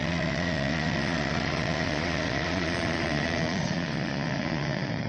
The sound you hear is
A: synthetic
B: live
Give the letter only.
A